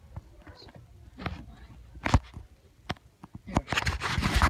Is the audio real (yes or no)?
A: yes